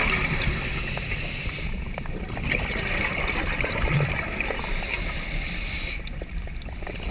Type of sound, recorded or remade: recorded